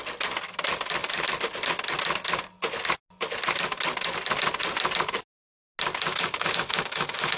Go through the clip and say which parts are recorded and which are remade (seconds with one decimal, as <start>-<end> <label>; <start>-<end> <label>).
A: 0.0-6.1 recorded; 6.1-7.4 remade